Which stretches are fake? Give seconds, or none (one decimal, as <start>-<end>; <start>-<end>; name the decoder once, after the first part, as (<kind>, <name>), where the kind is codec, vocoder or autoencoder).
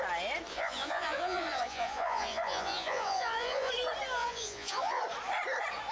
0.5-3.7 (vocoder, Vocos); 4.2-5.0